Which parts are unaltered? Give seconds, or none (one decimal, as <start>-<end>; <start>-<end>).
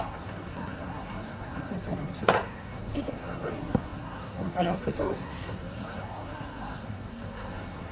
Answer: none